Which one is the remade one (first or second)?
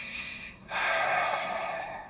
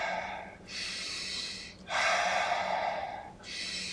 first